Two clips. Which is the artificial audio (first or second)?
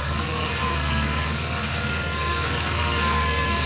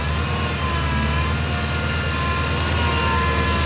first